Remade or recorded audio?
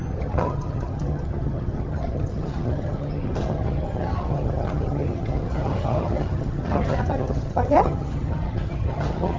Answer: remade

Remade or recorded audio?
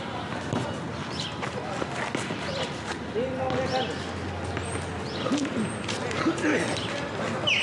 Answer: recorded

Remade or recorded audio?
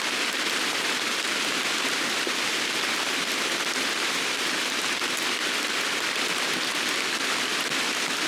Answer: recorded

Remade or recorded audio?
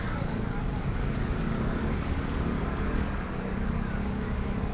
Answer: remade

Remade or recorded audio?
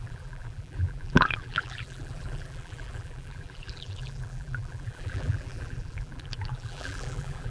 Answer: remade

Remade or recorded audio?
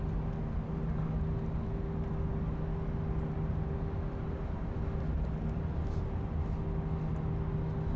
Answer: recorded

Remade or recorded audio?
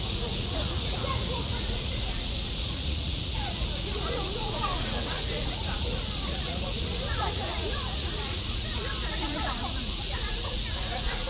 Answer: remade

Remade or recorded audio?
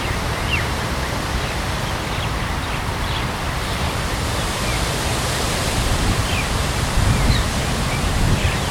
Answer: remade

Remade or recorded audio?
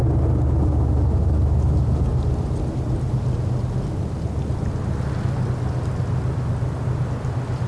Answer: recorded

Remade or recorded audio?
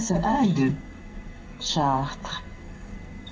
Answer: remade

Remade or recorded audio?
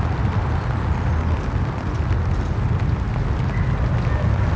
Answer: recorded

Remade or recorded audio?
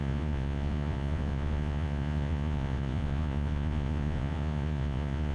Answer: remade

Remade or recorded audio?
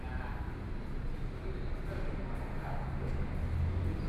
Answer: recorded